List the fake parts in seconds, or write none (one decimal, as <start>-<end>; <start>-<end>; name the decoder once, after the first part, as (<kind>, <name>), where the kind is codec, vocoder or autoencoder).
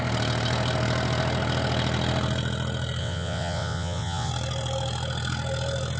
3.0-4.3 (vocoder, WaveNeXt)